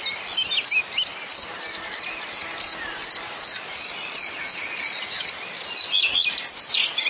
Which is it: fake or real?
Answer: real